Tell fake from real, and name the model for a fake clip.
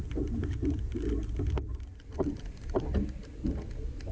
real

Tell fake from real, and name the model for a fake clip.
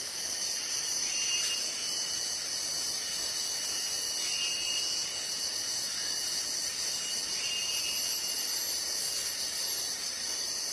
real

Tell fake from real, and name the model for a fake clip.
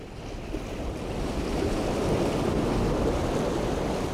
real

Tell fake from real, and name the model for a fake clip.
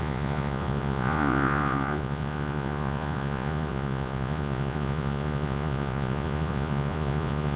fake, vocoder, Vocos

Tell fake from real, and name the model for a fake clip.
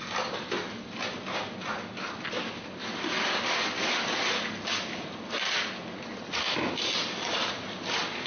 real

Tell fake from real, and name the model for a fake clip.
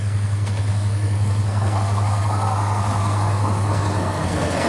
fake, codec, SNAC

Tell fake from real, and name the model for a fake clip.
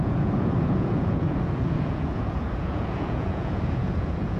fake, vocoder, Vocos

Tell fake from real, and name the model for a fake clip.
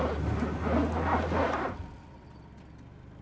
real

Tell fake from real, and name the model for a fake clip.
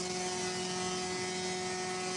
real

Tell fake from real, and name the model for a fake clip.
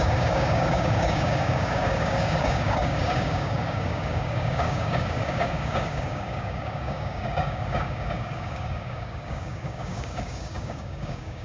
fake, codec, DAC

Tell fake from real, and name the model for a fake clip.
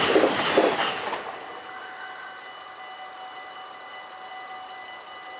real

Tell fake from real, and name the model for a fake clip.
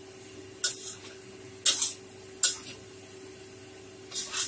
real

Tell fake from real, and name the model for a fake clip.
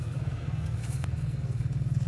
fake, codec, SNAC